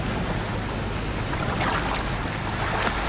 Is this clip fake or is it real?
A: real